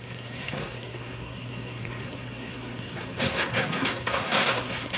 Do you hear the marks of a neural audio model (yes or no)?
yes